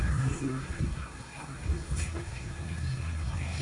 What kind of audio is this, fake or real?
fake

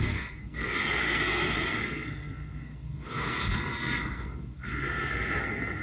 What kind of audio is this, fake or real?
fake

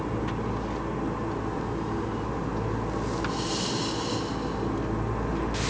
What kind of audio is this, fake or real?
real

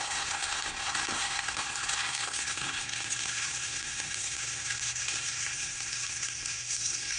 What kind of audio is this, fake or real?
fake